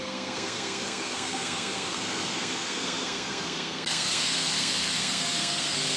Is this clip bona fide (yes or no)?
no